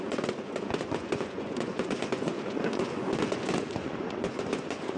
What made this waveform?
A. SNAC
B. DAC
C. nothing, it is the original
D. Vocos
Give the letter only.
D